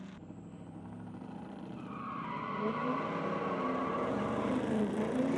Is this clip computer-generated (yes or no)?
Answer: yes